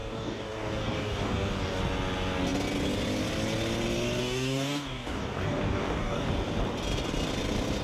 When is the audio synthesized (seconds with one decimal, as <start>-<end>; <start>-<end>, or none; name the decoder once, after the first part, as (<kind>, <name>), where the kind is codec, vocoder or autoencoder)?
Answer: 0.0-1.8 (codec, DAC); 4.2-6.3